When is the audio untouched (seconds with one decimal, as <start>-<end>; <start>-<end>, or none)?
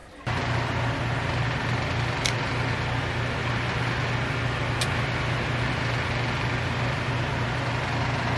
0.0-8.4